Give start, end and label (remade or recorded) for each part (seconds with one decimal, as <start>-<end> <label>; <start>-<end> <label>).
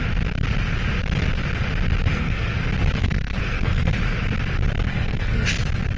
0.0-2.1 recorded; 2.1-2.6 remade; 2.6-3.0 recorded; 3.0-3.9 remade; 3.9-4.9 recorded; 4.9-5.5 remade; 5.5-6.0 recorded